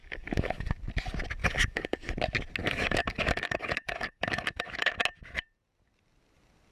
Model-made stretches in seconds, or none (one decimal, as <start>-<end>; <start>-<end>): 0.0-0.7; 1.4-2.1; 2.6-5.0